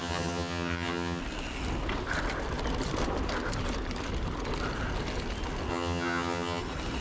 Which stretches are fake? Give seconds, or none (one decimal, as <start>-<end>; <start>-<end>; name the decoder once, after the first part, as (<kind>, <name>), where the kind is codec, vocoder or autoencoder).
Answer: 0.0-1.2 (vocoder, HiFi-GAN); 5.7-6.6